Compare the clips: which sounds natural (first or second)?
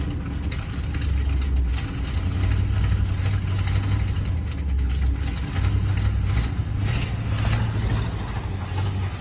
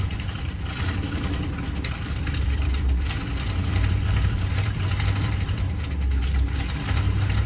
first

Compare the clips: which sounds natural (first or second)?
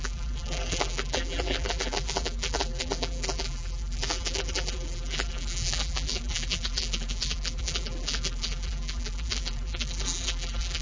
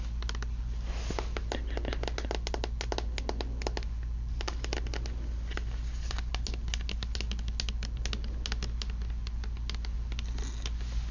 second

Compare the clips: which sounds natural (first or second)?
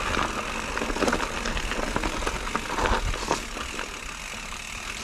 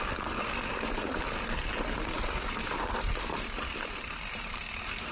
first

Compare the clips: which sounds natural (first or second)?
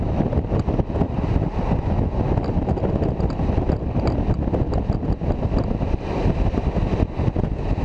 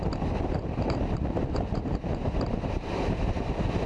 first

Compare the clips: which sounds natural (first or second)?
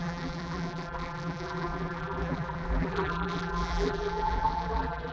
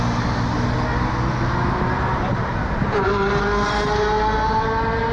second